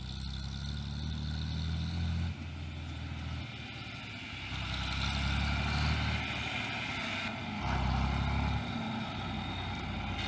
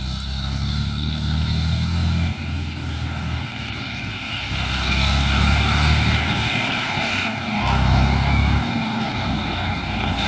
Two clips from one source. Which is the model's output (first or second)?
second